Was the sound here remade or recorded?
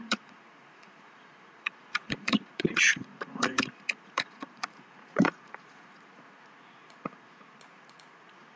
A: remade